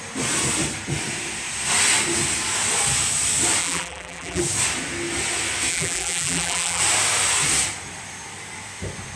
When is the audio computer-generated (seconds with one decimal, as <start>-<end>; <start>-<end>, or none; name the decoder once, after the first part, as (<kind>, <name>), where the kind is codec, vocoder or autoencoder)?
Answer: 3.6-4.4 (vocoder, BigVGAN v2); 5.7-6.8